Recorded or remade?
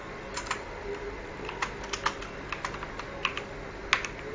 recorded